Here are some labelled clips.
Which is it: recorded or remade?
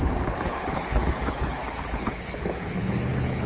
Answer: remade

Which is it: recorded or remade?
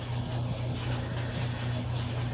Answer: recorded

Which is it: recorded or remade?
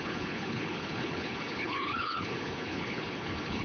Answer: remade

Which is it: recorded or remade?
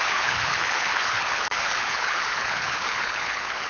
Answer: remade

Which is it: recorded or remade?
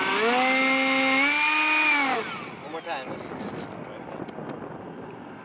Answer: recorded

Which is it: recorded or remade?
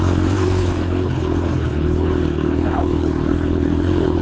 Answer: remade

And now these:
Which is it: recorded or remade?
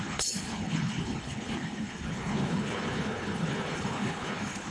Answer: remade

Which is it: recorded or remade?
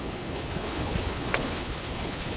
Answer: remade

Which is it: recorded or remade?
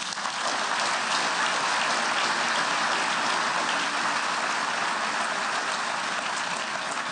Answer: recorded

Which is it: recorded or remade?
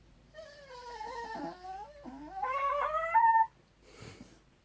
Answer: recorded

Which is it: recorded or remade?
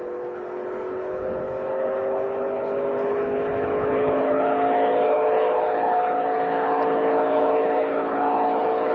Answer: remade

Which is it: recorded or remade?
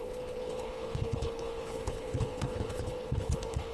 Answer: remade